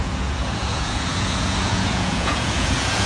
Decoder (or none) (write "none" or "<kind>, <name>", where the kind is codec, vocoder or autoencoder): vocoder, Vocos